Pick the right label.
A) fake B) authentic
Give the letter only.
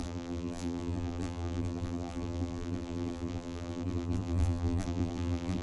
A